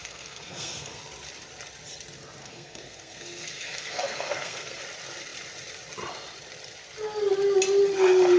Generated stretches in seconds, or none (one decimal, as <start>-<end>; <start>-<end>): 0.0-1.0; 2.4-4.8